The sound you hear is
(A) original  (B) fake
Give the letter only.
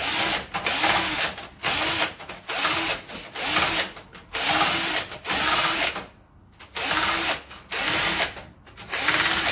A